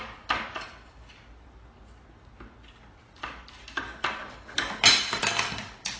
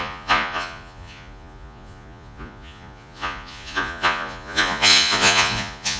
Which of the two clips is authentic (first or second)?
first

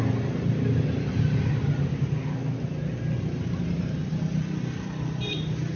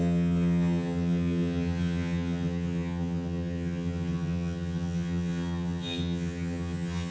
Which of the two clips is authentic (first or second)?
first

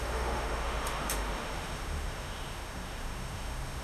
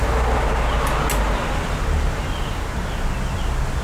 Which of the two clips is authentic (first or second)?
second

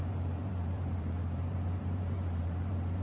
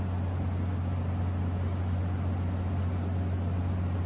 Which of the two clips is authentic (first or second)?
second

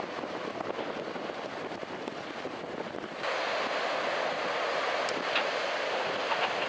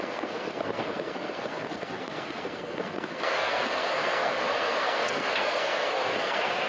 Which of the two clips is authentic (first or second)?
first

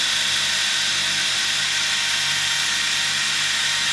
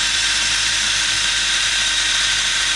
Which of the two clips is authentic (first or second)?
first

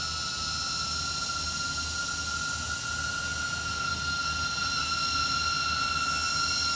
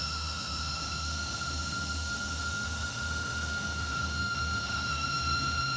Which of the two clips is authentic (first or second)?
first